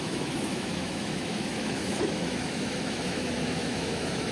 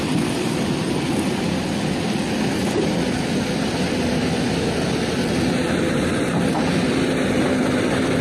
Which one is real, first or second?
second